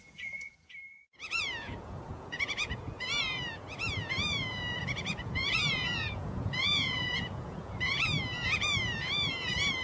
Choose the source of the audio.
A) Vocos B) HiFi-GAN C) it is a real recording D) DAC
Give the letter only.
A